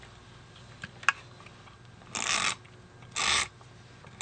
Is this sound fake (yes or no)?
no